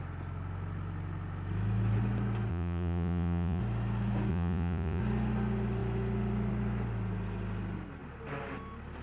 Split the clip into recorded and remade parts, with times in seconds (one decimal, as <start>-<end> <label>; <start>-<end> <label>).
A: 0.0-2.5 recorded; 2.5-3.6 remade; 3.6-4.3 recorded; 4.3-5.0 remade; 5.0-9.0 recorded